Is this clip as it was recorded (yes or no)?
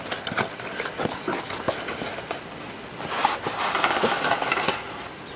yes